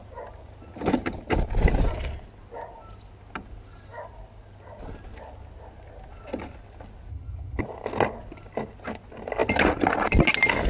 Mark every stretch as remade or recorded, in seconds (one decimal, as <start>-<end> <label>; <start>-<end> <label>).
0.0-7.1 recorded; 7.1-7.6 remade; 7.6-10.7 recorded